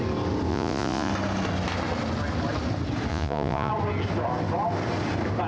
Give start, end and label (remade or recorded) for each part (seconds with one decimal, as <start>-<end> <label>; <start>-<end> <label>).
0.0-0.5 recorded; 0.5-1.1 remade; 1.1-3.1 recorded; 3.1-3.7 remade; 3.7-5.5 recorded